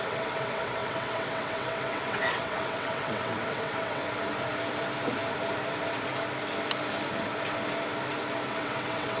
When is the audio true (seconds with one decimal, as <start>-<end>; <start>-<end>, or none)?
4.0-8.5